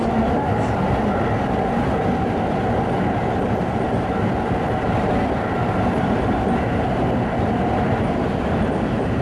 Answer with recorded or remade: recorded